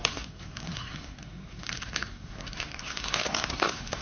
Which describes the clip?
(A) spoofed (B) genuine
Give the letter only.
A